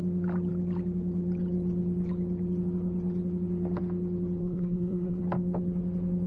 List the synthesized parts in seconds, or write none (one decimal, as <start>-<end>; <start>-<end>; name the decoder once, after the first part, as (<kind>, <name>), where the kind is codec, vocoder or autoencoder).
4.4-5.2 (codec, SNAC)